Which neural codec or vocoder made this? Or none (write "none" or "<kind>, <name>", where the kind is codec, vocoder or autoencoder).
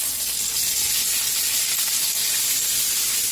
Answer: none